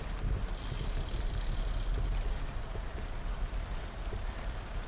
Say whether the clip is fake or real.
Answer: real